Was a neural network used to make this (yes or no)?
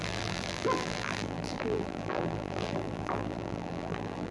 yes